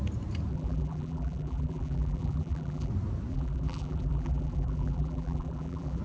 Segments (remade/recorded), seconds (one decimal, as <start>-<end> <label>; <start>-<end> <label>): 0.0-0.5 recorded; 0.5-2.9 remade; 2.9-3.3 recorded; 3.3-6.0 remade